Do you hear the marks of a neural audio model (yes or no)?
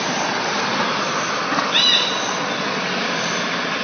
no